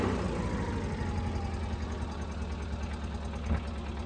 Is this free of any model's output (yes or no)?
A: yes